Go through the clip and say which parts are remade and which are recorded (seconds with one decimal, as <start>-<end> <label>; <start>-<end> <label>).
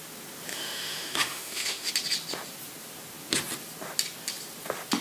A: 0.0-0.5 recorded; 0.5-1.9 remade; 1.9-5.0 recorded